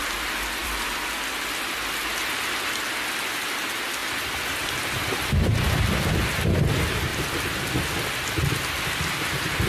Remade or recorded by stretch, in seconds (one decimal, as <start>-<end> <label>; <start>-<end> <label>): 0.0-0.6 recorded; 0.6-2.5 remade; 2.5-9.7 recorded